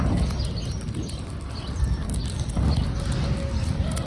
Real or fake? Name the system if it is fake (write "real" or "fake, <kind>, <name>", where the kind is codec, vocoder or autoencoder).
real